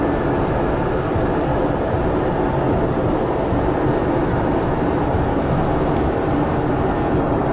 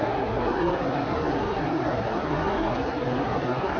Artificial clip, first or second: second